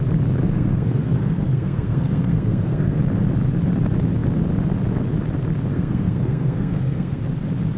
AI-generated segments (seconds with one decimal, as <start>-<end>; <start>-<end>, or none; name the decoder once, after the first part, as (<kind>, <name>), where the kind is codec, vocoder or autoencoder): 0.4-3.0 (codec, SNAC); 5.7-7.2